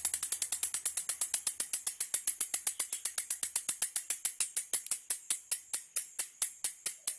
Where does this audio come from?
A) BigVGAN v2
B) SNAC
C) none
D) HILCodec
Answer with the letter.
C